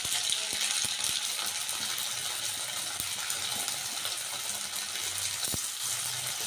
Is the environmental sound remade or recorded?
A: recorded